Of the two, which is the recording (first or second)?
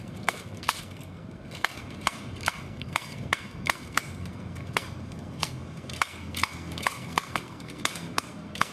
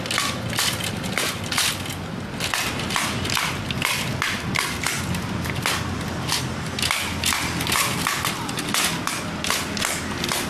second